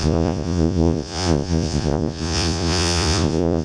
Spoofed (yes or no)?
yes